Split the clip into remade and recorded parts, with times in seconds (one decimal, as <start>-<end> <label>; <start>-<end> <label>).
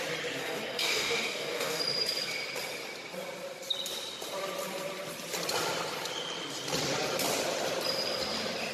0.0-0.4 recorded; 0.4-1.8 remade; 1.8-8.7 recorded